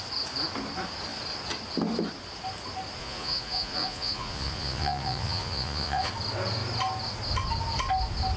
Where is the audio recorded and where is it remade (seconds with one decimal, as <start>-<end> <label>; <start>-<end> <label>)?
0.0-3.0 recorded; 3.0-6.1 remade; 6.1-8.4 recorded